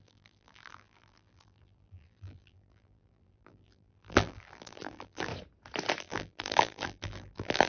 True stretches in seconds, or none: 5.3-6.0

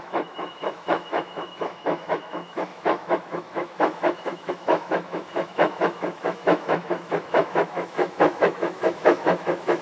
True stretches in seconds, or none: none

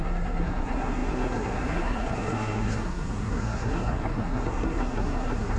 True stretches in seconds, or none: none